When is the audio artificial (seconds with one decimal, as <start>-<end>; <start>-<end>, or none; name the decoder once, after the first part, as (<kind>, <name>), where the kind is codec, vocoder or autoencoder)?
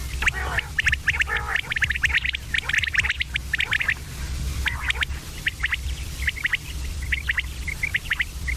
2.7-3.4 (vocoder, BigVGAN v2); 5.3-8.6